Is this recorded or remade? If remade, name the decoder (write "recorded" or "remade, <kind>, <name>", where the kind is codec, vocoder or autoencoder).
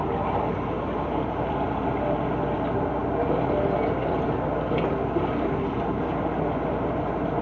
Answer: recorded